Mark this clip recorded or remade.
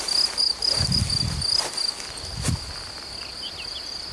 recorded